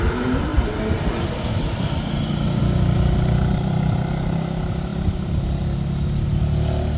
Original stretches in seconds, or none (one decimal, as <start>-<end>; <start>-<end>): 0.0-7.0